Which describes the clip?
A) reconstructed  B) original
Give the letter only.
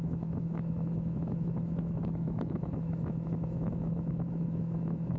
A